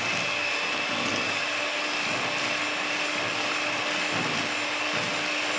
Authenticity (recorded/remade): recorded